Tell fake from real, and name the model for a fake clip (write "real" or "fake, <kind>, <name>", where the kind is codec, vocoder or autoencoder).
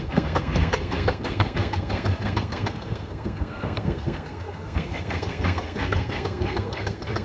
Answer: fake, codec, SNAC